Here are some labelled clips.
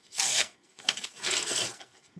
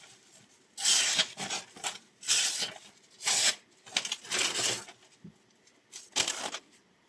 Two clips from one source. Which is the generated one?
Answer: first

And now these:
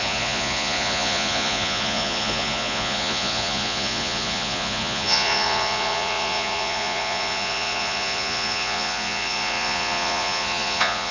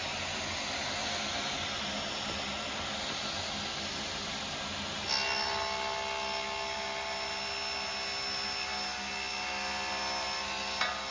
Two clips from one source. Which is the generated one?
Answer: first